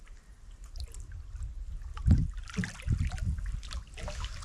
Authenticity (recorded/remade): recorded